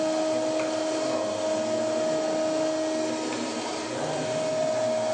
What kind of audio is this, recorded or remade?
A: recorded